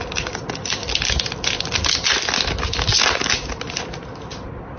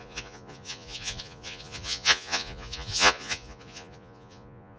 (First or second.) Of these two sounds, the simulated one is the second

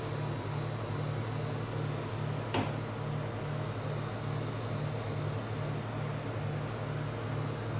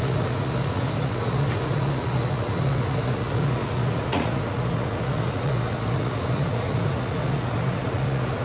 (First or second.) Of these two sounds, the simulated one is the second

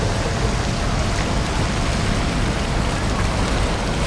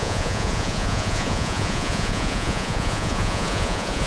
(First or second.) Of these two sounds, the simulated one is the second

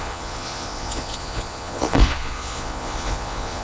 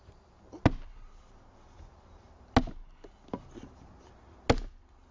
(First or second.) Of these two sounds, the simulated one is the first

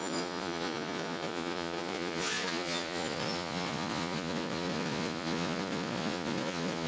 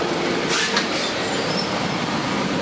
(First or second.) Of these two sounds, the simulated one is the first